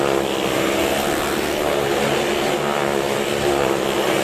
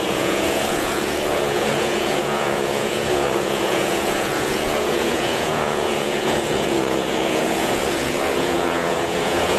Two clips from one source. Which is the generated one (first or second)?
second